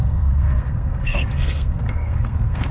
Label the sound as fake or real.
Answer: fake